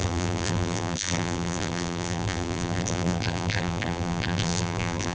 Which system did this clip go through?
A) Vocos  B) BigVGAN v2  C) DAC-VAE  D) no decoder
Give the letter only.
B